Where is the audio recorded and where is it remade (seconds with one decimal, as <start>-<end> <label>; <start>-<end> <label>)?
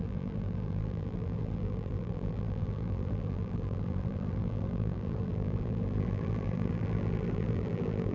0.0-8.1 remade